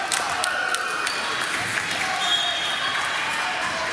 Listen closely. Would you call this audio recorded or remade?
recorded